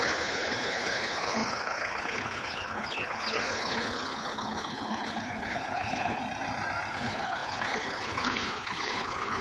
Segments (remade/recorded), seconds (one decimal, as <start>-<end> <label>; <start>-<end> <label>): 0.0-6.2 remade; 6.2-6.9 recorded; 6.9-9.4 remade